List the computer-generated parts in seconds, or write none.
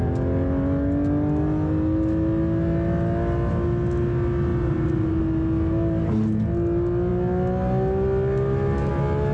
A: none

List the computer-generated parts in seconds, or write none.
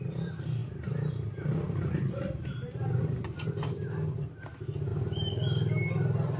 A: none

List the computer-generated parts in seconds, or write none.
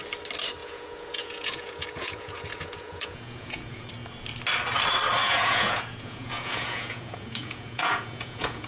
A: 0.6-3.9 (vocoder, Vocos); 5.2-8.7